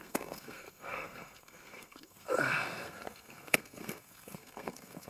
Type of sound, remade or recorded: remade